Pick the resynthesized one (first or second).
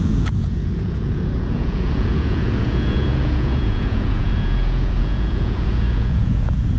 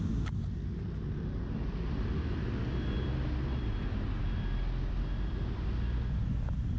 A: first